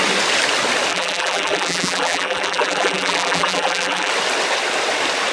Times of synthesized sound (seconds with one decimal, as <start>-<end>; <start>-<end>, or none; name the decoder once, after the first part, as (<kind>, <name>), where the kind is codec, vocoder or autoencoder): 0.9-4.1 (vocoder, BigVGAN v2)